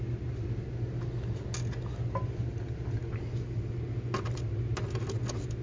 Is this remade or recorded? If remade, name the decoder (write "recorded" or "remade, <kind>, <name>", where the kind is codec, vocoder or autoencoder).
recorded